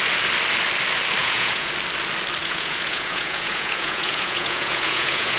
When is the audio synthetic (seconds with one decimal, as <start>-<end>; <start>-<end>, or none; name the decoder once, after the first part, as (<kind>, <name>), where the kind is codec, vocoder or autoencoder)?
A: 1.2-1.7 (vocoder, Vocos); 2.4-5.4